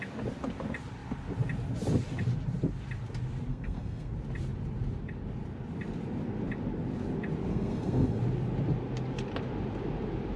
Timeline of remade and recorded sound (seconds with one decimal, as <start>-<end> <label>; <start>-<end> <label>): 0.0-3.5 recorded; 3.5-4.1 remade; 4.1-7.5 recorded; 7.5-8.2 remade; 8.2-10.4 recorded

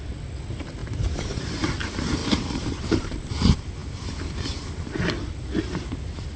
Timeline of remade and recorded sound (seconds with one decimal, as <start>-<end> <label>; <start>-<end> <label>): 0.0-0.8 recorded; 0.8-1.4 remade; 1.4-2.2 recorded; 2.2-3.3 remade; 3.3-6.4 recorded

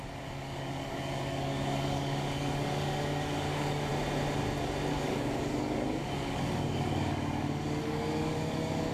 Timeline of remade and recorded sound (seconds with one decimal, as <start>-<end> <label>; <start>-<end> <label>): 0.0-3.9 remade; 3.9-4.9 recorded; 4.9-8.9 remade

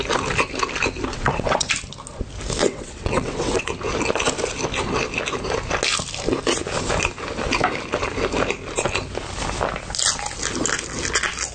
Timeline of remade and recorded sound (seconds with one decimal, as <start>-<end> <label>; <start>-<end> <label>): 0.0-1.1 recorded; 1.1-1.7 remade; 1.7-2.6 recorded; 2.6-3.7 remade; 3.7-11.5 recorded

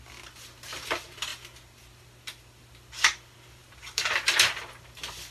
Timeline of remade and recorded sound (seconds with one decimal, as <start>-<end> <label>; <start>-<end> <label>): 0.0-3.6 recorded; 3.6-4.6 remade; 4.6-5.3 recorded

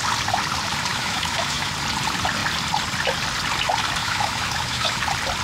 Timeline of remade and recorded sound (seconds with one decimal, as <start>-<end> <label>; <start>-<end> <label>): 0.0-0.9 recorded; 0.9-1.7 remade; 1.7-4.0 recorded; 4.0-5.0 remade; 5.0-5.4 recorded

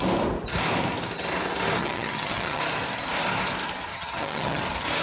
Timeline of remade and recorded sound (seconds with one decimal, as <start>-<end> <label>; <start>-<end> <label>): 0.0-1.8 recorded; 1.8-2.6 remade; 2.6-3.9 recorded; 3.9-4.6 remade; 4.6-5.0 recorded

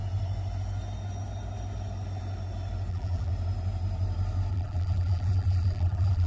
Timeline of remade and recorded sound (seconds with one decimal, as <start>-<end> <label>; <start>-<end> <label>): 0.0-2.9 recorded; 2.9-3.3 remade; 3.3-4.5 recorded; 4.5-6.3 remade